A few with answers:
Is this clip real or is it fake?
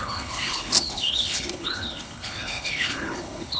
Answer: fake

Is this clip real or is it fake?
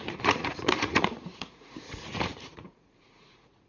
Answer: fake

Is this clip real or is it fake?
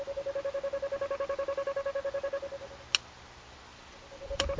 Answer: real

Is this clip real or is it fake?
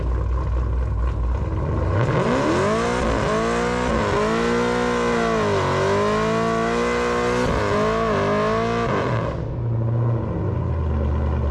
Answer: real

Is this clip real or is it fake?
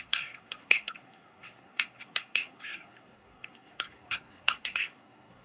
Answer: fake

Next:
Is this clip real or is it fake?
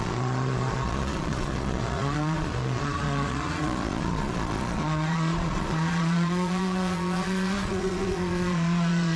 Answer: fake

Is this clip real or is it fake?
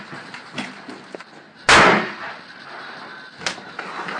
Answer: real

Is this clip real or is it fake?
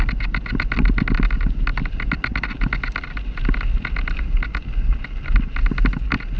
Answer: real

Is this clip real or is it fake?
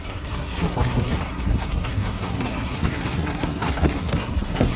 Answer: fake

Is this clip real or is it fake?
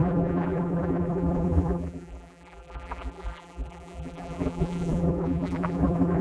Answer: fake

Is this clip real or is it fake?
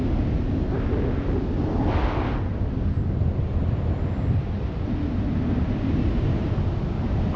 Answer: real